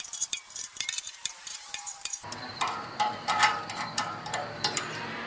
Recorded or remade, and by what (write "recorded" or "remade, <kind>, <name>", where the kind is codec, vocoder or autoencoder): remade, vocoder, BigVGAN v2